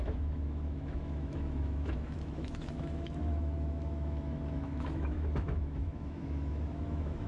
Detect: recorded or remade remade